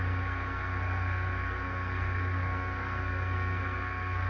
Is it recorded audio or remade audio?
remade